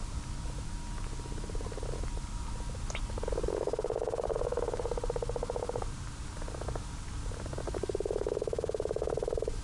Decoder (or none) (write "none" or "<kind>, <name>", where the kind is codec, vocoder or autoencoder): none